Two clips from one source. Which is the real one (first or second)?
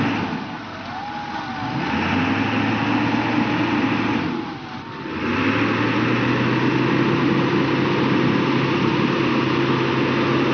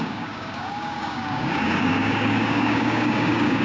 first